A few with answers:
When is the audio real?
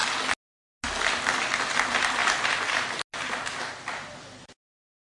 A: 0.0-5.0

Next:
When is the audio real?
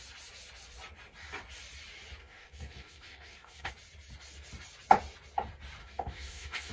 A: 0.0-2.2; 3.7-5.8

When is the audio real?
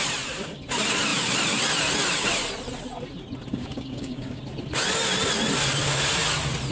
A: 0.0-3.5; 4.4-6.7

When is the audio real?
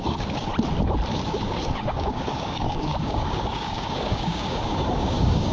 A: 0.5-1.1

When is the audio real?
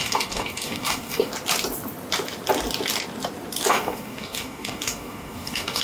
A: 1.3-3.7